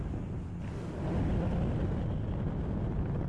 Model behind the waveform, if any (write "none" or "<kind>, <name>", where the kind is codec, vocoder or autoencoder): none